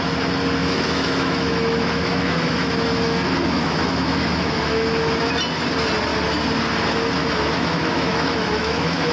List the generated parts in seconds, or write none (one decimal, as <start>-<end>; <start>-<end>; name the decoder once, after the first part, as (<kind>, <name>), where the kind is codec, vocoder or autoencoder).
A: 0.6-5.2 (autoencoder, DAC-VAE); 7.2-9.1